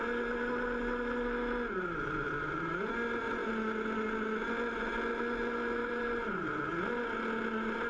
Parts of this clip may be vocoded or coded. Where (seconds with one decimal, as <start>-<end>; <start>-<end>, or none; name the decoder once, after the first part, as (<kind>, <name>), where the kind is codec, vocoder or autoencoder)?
5.8-6.5 (vocoder, BigVGAN v2)